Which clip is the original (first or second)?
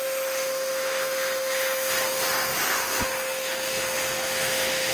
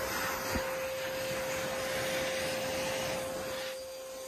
second